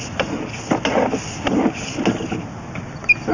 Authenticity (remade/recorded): recorded